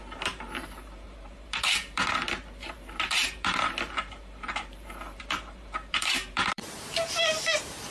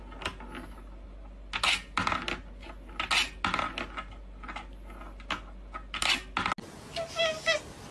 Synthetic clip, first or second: first